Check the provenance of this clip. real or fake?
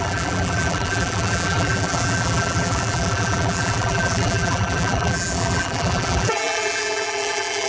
fake